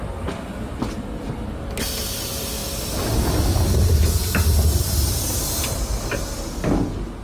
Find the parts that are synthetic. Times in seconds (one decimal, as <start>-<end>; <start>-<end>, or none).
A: none